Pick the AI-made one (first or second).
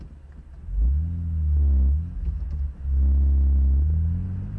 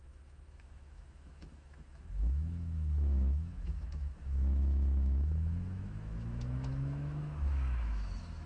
second